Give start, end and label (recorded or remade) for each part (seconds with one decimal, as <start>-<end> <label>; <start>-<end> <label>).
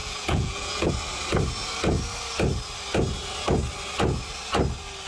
0.0-0.9 remade; 0.9-5.1 recorded